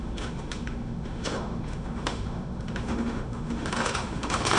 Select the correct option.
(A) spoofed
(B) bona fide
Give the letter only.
A